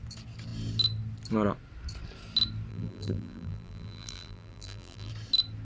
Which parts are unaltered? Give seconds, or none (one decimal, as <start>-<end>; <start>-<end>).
0.0-2.7; 5.1-5.6